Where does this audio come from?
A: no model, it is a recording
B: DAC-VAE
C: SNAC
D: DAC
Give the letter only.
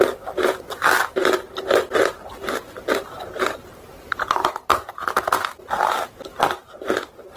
A